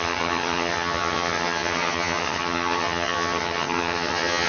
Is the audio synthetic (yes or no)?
yes